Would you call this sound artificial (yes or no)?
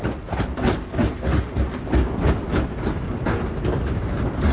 no